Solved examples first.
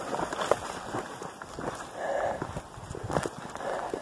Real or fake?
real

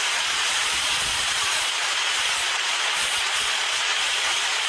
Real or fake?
fake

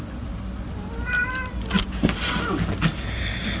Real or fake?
real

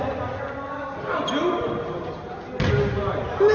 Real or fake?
real